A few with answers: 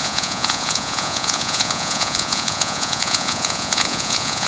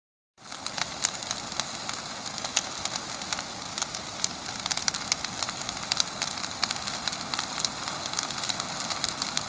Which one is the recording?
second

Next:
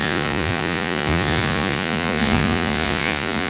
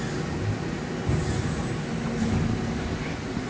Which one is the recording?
second